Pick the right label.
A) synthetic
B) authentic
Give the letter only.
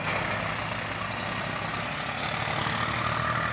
B